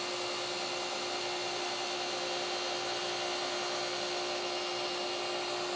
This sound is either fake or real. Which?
real